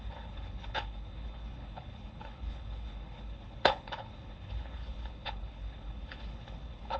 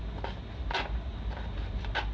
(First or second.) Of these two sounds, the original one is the second